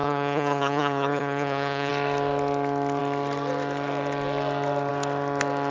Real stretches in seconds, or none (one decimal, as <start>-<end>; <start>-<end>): 1.9-5.7